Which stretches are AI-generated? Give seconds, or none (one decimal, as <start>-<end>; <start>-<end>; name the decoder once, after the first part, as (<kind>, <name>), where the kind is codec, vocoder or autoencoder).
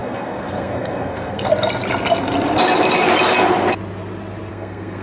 0.0-1.5 (codec, SNAC); 4.5-5.0